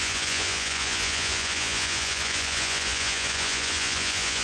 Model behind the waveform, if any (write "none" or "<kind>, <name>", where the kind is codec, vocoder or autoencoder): vocoder, Vocos